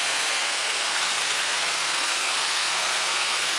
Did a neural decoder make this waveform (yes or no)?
yes